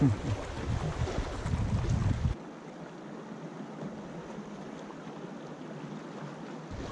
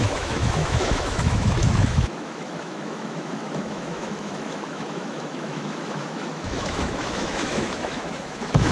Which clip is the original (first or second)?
first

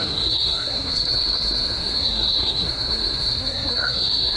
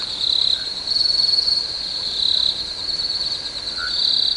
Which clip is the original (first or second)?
second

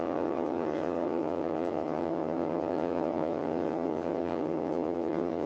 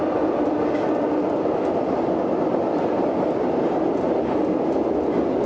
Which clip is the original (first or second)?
second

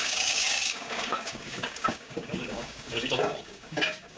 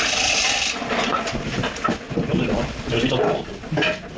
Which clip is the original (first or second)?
second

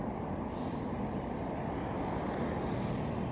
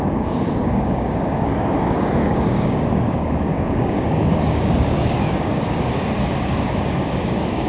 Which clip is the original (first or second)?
first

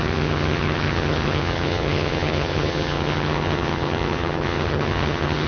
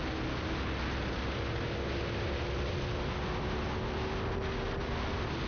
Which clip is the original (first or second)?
second